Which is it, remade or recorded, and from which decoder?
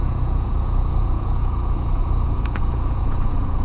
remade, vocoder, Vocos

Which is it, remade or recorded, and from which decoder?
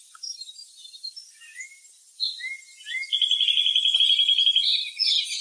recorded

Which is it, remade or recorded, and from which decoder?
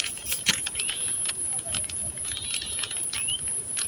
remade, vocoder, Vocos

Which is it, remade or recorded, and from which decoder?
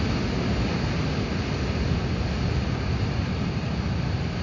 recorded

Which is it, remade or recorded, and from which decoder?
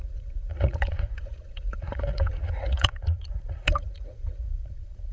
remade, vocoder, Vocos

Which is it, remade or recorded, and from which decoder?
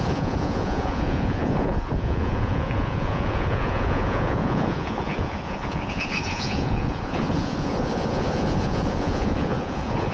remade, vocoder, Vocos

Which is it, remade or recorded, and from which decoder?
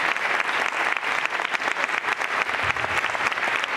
recorded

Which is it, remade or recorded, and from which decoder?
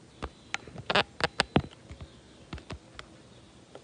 recorded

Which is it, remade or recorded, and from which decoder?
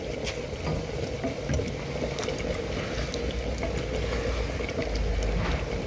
recorded